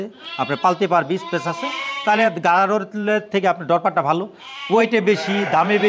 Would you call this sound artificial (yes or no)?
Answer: yes